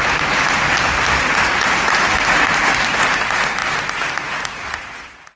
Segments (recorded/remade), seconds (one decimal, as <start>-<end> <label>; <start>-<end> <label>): 0.0-5.4 recorded

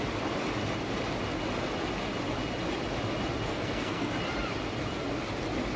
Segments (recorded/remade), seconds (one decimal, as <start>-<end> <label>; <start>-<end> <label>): 0.0-3.5 recorded; 3.5-4.1 remade; 4.1-5.8 recorded

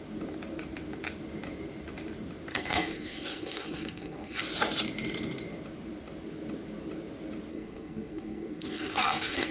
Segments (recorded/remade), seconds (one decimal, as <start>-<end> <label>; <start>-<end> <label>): 0.0-2.5 recorded; 2.5-4.4 remade; 4.4-7.5 recorded; 7.5-9.5 remade

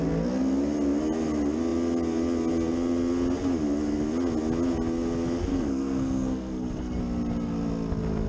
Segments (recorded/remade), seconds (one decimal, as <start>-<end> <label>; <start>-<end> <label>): 0.0-5.5 recorded; 5.5-7.0 remade; 7.0-8.3 recorded

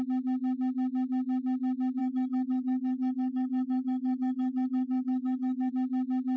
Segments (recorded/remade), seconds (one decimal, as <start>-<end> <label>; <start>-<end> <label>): 0.0-2.0 recorded; 2.0-5.7 remade; 5.7-6.4 recorded